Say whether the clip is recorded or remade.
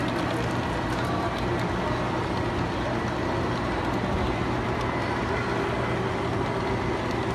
recorded